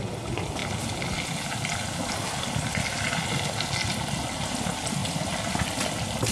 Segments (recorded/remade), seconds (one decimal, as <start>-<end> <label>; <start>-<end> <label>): 0.0-6.3 recorded